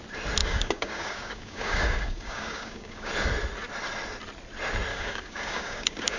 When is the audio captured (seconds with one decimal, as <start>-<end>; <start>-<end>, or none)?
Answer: 0.0-0.4; 3.1-4.9